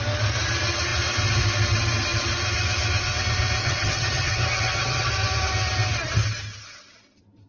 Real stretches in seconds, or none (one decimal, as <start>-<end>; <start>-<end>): 0.0-3.6; 5.1-7.5